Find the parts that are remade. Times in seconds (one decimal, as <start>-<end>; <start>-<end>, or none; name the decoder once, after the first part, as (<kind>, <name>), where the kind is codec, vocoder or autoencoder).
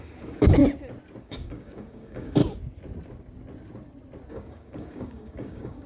0.0-0.6 (codec, DAC); 1.2-2.4; 4.3-5.9